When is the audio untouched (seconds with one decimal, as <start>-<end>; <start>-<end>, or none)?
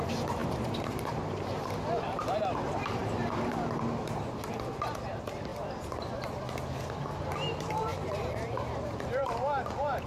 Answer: 5.5-6.9